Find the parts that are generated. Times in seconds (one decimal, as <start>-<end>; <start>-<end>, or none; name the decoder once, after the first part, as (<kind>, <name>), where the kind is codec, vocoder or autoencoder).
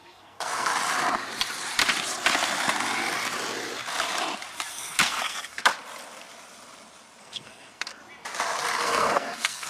0.0-0.7 (codec, SNAC); 4.7-5.7; 7.2-8.0; 8.8-9.7